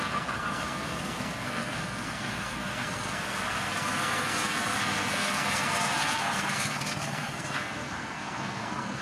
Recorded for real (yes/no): no